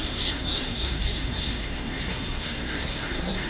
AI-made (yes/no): yes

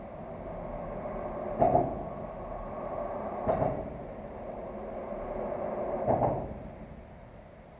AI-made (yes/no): no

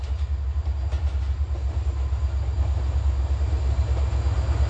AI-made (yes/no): no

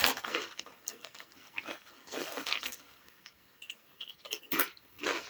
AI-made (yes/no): yes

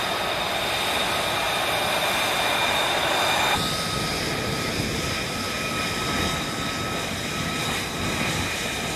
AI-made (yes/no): no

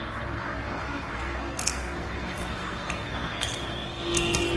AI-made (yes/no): yes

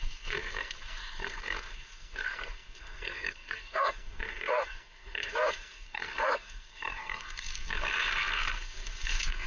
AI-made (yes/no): yes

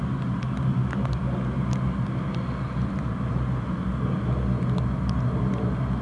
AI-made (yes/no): no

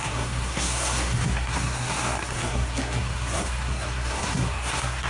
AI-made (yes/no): yes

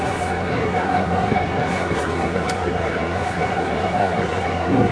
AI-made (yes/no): yes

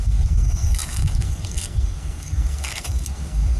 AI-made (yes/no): yes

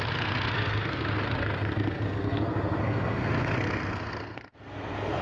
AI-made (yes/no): yes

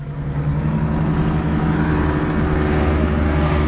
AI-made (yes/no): no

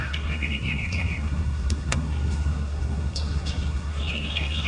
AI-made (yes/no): yes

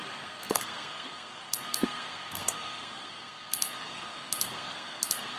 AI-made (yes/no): yes